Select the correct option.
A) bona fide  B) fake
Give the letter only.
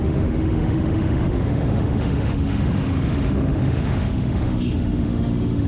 B